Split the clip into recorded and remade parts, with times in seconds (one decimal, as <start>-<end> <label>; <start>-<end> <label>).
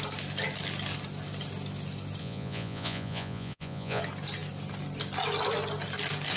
0.0-2.2 recorded; 2.2-4.0 remade; 4.0-6.4 recorded